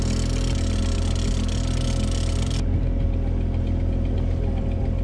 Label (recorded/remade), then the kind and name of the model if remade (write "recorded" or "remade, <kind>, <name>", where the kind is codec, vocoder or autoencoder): recorded